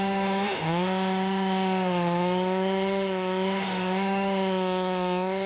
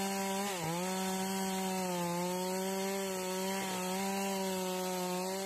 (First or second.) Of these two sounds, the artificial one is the first